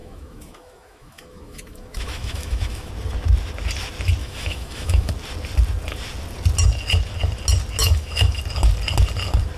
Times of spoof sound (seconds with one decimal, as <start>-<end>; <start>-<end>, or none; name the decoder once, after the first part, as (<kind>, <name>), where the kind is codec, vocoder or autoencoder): 0.0-2.9 (autoencoder, DAC-VAE); 4.2-5.1; 7.8-8.4